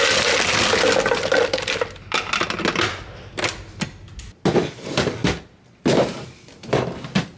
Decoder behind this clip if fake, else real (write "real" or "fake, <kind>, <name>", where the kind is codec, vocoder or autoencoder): real